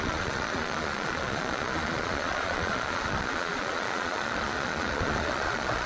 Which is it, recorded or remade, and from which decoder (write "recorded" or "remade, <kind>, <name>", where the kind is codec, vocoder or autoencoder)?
remade, vocoder, Vocos